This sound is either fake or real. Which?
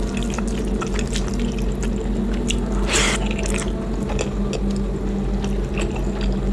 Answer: real